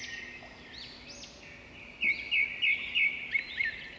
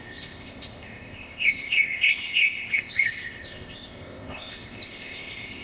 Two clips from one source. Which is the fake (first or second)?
second